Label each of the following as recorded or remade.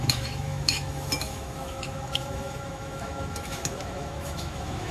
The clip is remade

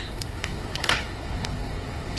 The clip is remade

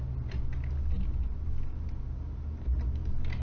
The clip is recorded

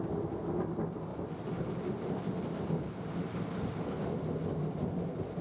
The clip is recorded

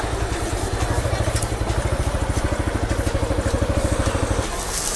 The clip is recorded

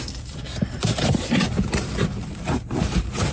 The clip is remade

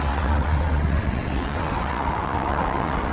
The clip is remade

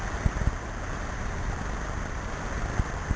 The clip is recorded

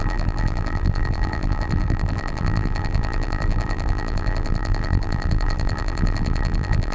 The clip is remade